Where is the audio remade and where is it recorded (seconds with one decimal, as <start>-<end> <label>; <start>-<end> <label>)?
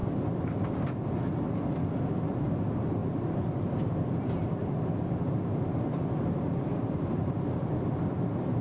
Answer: 0.0-8.6 recorded